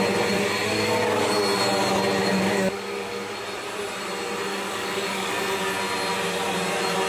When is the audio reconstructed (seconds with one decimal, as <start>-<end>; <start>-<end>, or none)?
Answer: 0.7-1.4; 2.2-3.3; 4.5-5.3